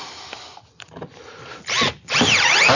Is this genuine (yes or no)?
yes